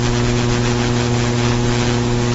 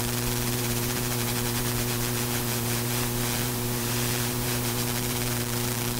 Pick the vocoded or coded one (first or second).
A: second